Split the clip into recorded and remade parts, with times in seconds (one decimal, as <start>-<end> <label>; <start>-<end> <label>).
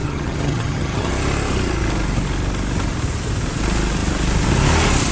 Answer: 0.0-1.1 remade; 1.1-5.1 recorded